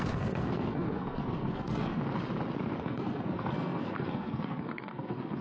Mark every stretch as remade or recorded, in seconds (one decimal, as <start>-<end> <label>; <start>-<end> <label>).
0.0-2.0 remade; 2.0-2.8 recorded; 2.8-5.4 remade